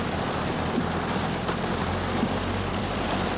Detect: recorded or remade remade